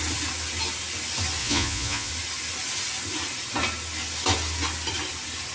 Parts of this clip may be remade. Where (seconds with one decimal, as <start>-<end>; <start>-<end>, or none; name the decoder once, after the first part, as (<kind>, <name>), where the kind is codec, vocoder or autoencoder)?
1.4-2.1 (vocoder, Vocos)